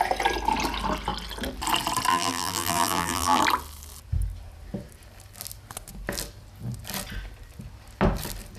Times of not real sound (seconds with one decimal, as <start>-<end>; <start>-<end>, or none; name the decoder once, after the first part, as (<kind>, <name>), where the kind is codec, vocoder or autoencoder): 2.1-3.4 (vocoder, BigVGAN v2)